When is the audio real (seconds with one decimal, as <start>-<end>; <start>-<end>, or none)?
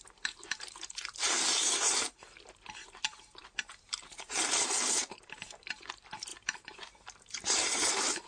none